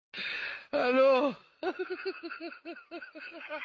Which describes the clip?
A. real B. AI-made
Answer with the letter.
A